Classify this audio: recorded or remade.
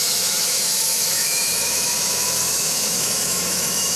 remade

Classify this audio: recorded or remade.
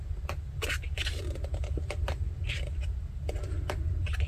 recorded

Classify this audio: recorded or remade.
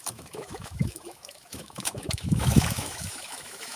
remade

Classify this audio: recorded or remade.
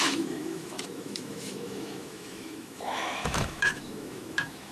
remade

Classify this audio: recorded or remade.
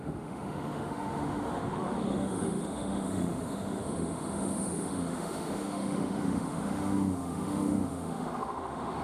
remade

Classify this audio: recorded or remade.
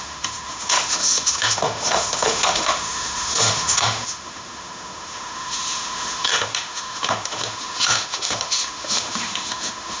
remade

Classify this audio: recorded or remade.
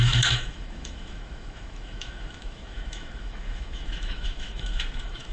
remade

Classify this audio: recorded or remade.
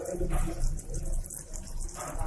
recorded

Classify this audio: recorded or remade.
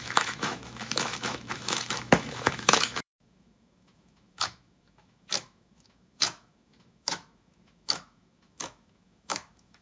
remade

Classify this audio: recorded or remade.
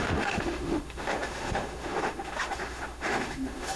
remade